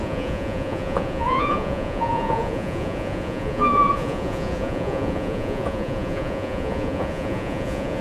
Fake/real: fake